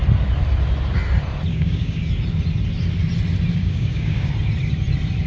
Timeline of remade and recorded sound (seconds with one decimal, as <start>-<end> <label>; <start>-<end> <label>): 0.0-1.5 recorded; 1.5-2.1 remade; 2.1-3.6 recorded; 3.6-4.3 remade; 4.3-5.3 recorded